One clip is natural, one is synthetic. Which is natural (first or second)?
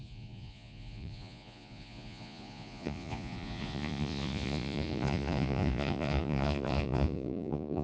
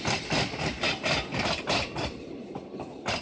second